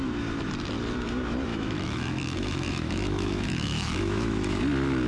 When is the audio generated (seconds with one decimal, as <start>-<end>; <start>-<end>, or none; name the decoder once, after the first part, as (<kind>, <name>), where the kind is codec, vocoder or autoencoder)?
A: 1.5-4.6 (autoencoder, DAC-VAE)